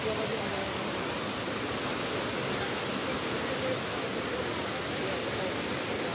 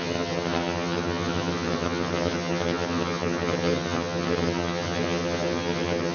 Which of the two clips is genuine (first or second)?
first